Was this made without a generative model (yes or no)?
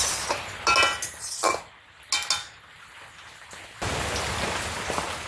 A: yes